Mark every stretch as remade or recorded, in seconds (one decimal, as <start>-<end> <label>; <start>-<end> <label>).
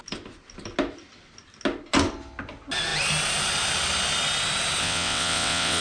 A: 0.0-4.8 recorded; 4.8-5.8 remade